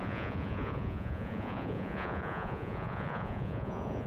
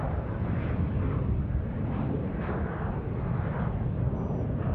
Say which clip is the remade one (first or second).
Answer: first